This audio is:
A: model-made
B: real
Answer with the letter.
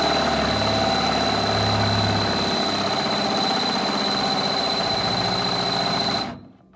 B